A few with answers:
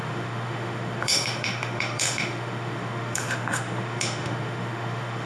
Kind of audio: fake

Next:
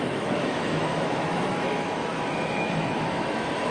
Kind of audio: fake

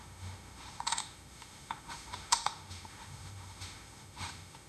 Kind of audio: fake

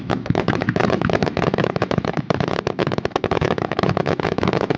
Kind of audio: fake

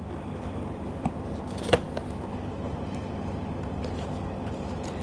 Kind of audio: real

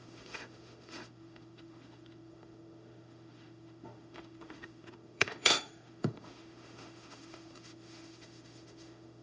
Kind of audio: fake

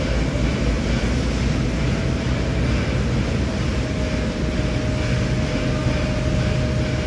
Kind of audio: real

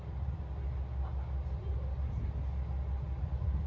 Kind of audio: real